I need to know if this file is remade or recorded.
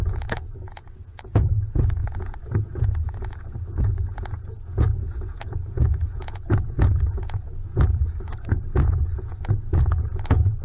remade